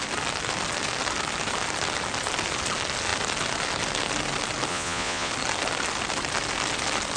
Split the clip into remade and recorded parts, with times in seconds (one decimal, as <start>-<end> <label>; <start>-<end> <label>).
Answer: 0.0-4.7 recorded; 4.7-5.3 remade; 5.3-7.2 recorded